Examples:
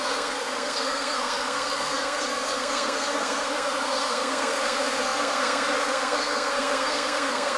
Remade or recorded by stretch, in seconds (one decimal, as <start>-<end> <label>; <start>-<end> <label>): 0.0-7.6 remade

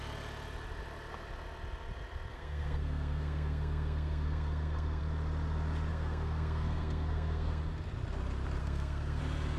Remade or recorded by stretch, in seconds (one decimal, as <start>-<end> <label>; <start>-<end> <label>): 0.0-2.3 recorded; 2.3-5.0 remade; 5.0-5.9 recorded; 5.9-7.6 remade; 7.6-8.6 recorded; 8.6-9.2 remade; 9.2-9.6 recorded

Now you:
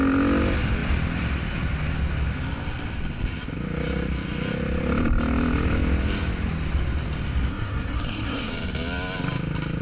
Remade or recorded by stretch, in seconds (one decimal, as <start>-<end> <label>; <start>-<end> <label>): 0.0-7.5 recorded; 7.5-8.5 remade; 8.5-9.8 recorded

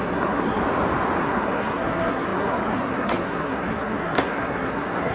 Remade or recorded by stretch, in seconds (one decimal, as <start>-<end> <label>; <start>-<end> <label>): 0.0-0.6 remade; 0.6-1.2 recorded; 1.2-5.1 remade

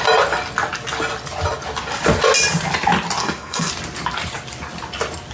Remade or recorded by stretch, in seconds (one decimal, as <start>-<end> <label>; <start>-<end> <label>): 0.0-3.2 recorded; 3.2-3.7 remade; 3.7-5.3 recorded